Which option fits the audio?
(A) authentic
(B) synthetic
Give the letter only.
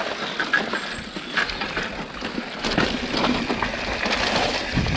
A